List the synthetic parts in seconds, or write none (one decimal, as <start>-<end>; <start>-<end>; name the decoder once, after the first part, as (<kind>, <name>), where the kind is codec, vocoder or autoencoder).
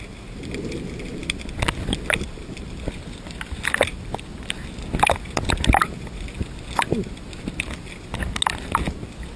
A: none